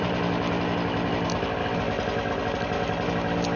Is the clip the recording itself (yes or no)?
yes